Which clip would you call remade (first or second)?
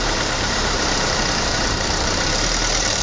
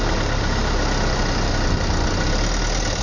first